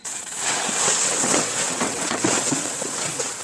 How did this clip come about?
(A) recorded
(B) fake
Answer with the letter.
B